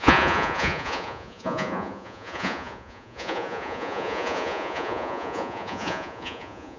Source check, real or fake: fake